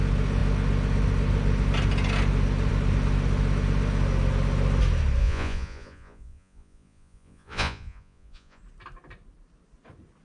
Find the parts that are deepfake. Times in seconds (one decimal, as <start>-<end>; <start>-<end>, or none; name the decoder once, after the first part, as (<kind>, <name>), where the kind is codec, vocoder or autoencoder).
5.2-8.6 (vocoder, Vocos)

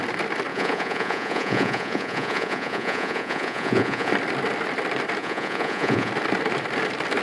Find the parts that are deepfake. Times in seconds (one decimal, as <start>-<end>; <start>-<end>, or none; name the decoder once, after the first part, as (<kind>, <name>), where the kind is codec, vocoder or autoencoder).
0.5-4.1 (vocoder, Vocos); 5.2-6.1

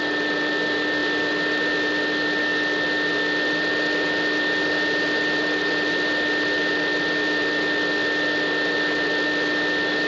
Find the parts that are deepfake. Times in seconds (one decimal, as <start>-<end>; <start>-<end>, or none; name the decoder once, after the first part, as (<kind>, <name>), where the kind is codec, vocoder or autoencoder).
none

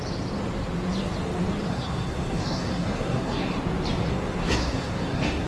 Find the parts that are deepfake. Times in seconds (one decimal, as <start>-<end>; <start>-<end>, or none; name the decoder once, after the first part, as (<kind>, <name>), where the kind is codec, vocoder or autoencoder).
1.7-3.6 (codec, SNAC); 4.1-5.5

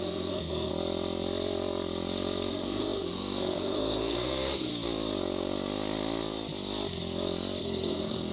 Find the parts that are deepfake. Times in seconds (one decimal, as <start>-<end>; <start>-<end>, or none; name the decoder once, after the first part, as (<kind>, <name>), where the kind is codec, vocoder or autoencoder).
0.0-0.7 (codec, SNAC); 2.5-4.7; 7.6-8.3

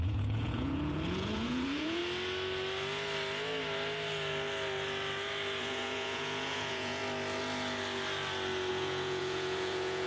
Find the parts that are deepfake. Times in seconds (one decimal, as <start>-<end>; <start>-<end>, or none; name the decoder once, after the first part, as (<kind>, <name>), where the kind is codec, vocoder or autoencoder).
0.0-2.0 (vocoder, Vocos); 5.6-7.0; 8.7-10.1

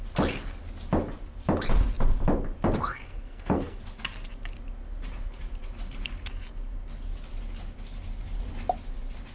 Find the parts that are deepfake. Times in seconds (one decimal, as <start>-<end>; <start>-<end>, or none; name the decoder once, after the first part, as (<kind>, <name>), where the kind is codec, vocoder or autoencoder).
2.9-3.8 (codec, SNAC)